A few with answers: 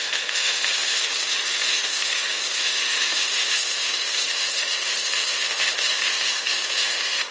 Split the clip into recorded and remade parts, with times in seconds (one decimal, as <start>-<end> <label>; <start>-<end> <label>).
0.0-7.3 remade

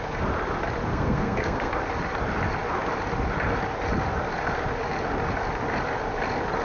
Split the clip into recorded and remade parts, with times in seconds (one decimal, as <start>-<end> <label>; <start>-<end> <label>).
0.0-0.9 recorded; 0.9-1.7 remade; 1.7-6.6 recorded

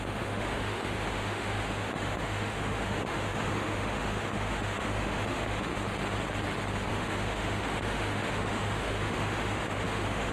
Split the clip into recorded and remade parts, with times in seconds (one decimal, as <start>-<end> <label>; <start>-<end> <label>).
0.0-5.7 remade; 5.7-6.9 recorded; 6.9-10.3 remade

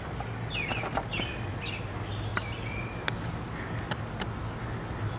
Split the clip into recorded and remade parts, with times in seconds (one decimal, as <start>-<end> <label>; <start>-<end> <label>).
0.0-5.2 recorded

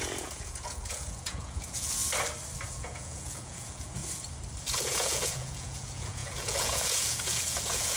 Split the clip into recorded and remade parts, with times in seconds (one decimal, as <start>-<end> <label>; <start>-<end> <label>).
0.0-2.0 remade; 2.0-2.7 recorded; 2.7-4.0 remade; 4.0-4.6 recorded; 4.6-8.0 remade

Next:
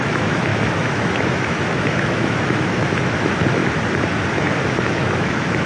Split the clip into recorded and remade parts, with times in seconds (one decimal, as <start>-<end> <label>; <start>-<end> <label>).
0.0-3.6 remade; 3.6-4.3 recorded; 4.3-5.7 remade

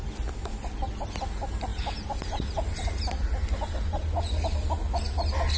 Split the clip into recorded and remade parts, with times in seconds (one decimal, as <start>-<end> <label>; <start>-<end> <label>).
0.0-5.6 recorded